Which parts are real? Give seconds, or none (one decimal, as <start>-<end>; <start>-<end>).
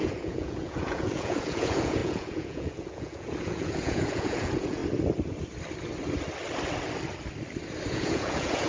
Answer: 4.8-7.9